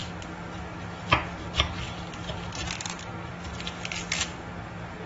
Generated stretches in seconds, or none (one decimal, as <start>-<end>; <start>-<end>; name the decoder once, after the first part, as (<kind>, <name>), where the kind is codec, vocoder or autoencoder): 4.3-5.1 (vocoder, BigVGAN v2)